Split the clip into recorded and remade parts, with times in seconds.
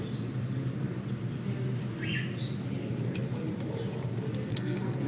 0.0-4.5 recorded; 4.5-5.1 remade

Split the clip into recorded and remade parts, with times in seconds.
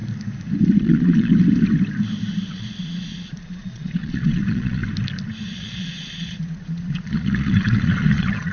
0.0-0.8 recorded; 0.8-1.3 remade; 1.3-2.5 recorded; 2.5-4.8 remade; 4.8-5.5 recorded; 5.5-8.5 remade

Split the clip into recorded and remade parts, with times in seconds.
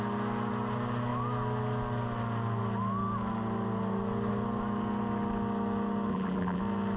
0.0-6.1 recorded; 6.1-6.6 remade; 6.6-7.0 recorded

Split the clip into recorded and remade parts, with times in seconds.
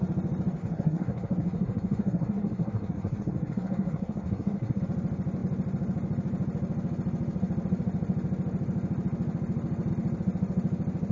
0.0-0.6 recorded; 0.6-4.8 remade; 4.8-11.1 recorded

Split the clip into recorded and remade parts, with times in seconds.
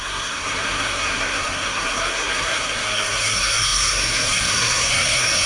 0.0-5.5 remade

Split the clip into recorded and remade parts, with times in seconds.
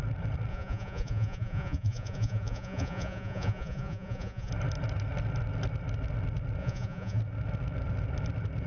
0.0-0.5 recorded; 0.5-4.5 remade; 4.5-6.6 recorded; 6.6-7.2 remade; 7.2-8.7 recorded